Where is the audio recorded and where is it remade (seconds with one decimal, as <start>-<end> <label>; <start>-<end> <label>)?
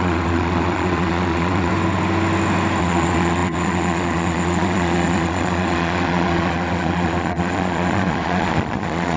0.0-1.7 remade; 1.7-2.8 recorded; 2.8-9.2 remade